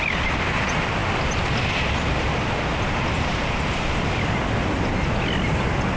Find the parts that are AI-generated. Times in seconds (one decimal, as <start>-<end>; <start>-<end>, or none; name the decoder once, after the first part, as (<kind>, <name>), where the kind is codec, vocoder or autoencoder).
none